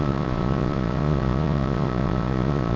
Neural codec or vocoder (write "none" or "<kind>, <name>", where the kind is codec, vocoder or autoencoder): vocoder, Vocos